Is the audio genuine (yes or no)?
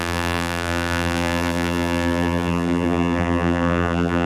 no